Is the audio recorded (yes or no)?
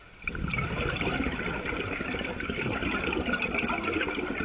yes